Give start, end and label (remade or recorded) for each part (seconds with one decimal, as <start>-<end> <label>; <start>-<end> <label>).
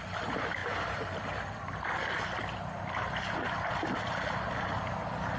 0.0-5.4 recorded